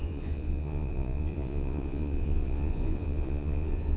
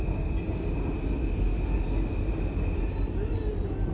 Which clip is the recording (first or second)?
second